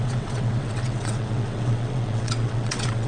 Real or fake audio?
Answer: fake